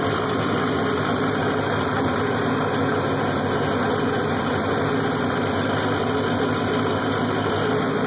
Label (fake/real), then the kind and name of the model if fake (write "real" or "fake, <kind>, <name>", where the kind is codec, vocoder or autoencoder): real